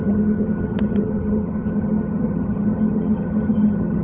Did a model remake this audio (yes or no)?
yes